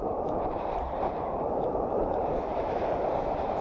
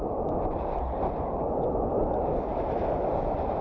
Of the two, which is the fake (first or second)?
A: first